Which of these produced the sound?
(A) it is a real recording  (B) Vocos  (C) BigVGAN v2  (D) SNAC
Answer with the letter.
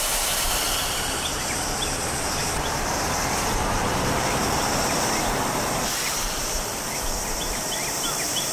C